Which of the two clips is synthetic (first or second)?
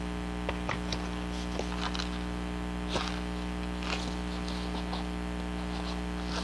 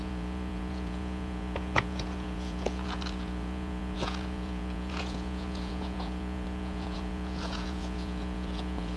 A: second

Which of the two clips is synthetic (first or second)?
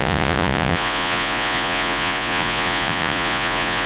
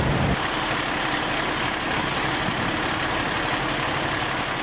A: first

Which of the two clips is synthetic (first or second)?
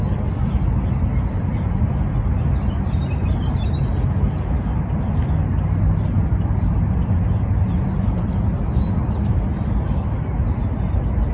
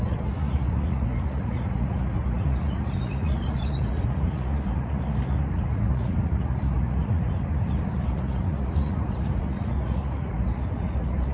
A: second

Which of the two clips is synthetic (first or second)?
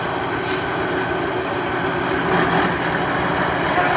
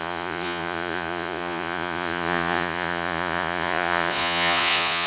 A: second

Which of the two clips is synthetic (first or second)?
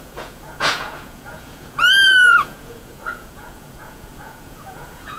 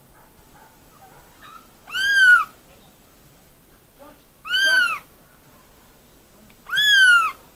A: first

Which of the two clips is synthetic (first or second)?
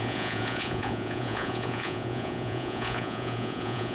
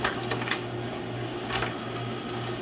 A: first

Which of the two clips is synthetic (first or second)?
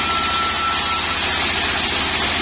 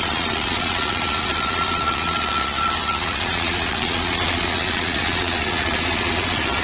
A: second